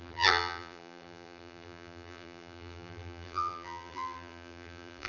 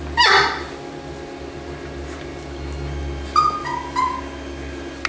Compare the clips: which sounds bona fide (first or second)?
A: second